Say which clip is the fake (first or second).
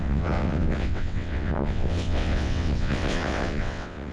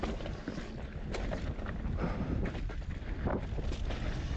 first